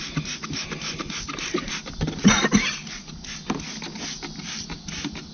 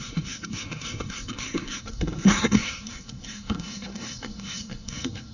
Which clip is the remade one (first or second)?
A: second